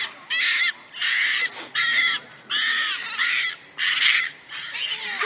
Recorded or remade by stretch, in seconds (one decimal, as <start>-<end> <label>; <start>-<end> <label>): 0.0-5.3 recorded

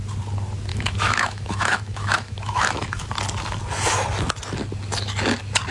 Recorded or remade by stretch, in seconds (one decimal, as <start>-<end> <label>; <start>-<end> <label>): 0.0-0.7 recorded; 0.7-3.1 remade; 3.1-5.7 recorded